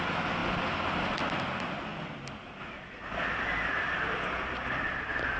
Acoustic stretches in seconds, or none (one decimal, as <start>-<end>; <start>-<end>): 0.0-5.4